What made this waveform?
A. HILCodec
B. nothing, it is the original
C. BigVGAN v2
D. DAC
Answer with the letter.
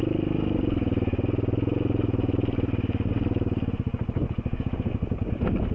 B